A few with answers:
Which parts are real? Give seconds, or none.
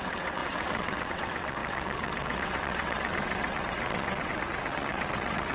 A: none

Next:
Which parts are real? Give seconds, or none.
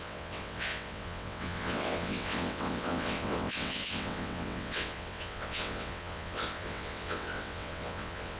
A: none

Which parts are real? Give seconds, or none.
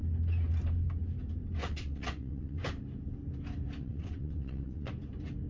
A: 0.0-1.6; 2.6-3.8; 4.9-5.5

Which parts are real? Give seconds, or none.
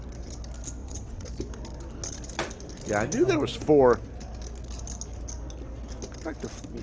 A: 0.0-0.8; 1.3-6.8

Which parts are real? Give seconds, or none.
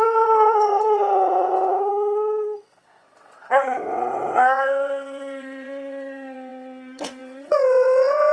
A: 1.9-2.6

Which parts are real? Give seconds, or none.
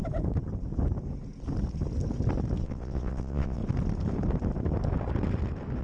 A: 0.0-2.6; 3.6-5.8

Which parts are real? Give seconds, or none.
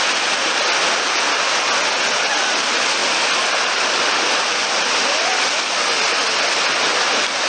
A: 0.0-7.5